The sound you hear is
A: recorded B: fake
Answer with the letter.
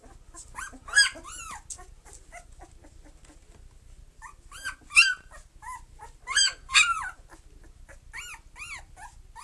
A